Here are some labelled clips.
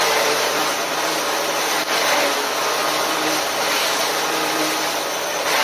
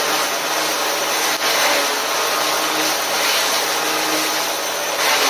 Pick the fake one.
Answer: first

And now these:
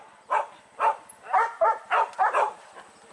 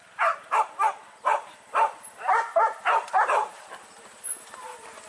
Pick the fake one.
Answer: second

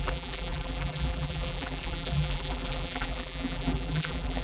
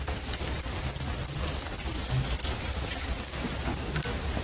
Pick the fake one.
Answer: first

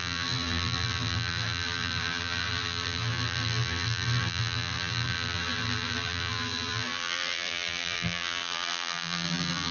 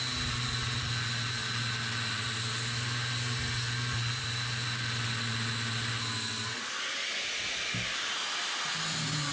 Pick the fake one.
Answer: first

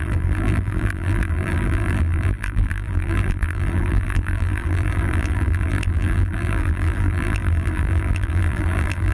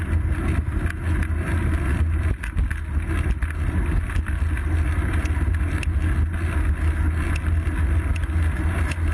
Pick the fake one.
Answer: first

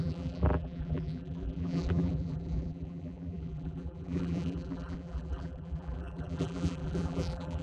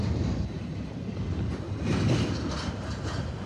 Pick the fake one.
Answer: first